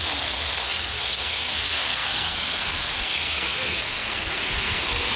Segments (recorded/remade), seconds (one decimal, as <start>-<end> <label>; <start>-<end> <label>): 0.0-5.2 remade

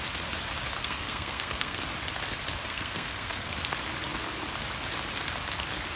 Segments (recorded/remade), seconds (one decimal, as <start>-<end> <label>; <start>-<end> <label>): 0.0-0.8 recorded; 0.8-1.8 remade; 1.8-2.6 recorded; 2.6-3.5 remade; 3.5-6.0 recorded

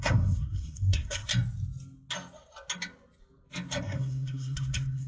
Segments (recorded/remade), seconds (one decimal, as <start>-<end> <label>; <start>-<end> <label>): 0.0-1.3 remade; 1.3-3.8 recorded; 3.8-5.1 remade

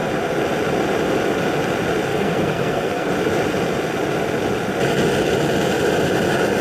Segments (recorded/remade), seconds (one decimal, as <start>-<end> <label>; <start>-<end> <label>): 0.0-2.1 recorded; 2.1-3.1 remade; 3.1-6.6 recorded

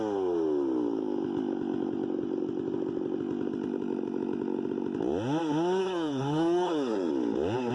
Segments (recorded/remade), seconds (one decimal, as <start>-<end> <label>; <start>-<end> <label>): 0.0-5.8 recorded; 5.8-7.1 remade; 7.1-7.7 recorded